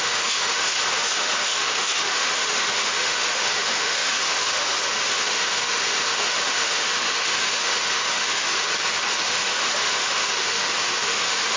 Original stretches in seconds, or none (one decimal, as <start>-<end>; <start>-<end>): 8.7-9.2